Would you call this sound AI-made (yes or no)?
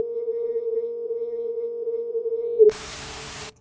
yes